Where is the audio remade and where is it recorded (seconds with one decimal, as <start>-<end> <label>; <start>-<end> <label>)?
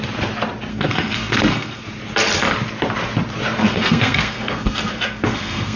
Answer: 0.0-0.7 recorded; 0.7-1.8 remade; 1.8-3.6 recorded; 3.6-5.8 remade